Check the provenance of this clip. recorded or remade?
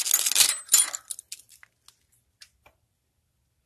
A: recorded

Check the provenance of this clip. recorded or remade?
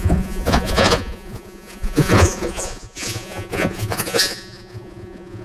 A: remade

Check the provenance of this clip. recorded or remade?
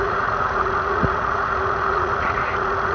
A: remade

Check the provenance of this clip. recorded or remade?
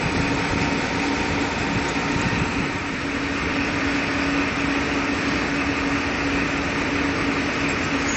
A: recorded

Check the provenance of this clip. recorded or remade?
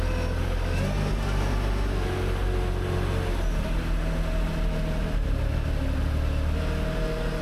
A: recorded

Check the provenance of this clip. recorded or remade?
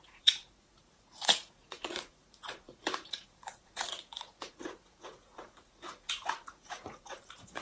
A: remade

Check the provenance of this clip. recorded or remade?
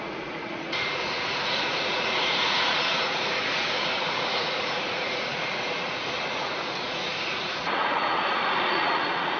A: remade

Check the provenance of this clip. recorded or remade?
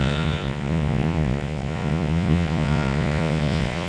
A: remade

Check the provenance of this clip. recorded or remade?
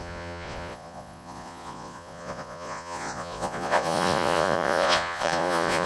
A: remade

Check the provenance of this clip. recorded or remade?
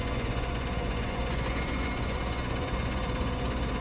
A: remade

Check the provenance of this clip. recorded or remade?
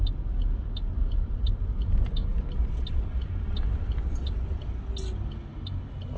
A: recorded